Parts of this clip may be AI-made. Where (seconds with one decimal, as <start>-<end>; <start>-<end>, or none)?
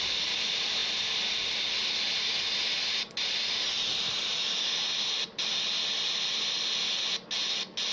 none